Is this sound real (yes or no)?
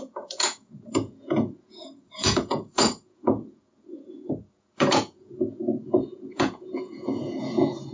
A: no